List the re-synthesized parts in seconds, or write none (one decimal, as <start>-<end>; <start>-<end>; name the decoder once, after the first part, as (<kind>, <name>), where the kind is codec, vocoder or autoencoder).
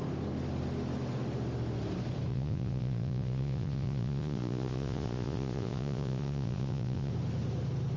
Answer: 2.3-7.1 (vocoder, Vocos)